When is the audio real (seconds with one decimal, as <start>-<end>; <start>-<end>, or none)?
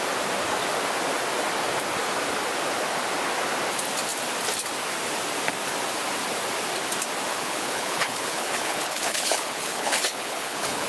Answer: 0.0-7.3